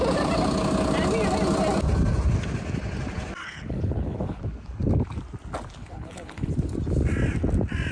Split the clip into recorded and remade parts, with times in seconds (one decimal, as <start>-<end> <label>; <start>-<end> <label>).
0.0-3.4 recorded; 3.4-4.4 remade; 4.4-5.8 recorded; 5.8-6.5 remade; 6.5-7.9 recorded